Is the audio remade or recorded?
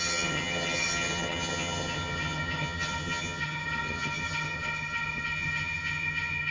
remade